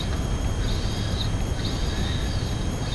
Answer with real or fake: fake